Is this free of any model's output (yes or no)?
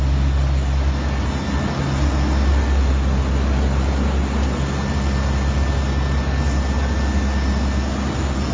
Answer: yes